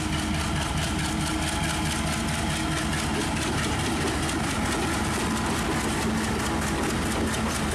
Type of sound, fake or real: real